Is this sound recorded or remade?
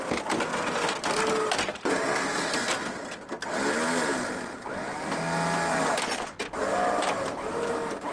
recorded